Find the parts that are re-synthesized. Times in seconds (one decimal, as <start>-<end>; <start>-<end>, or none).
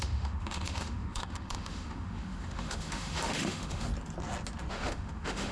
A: 0.0-3.9; 4.7-5.5